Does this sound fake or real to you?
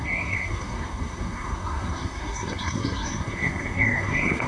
fake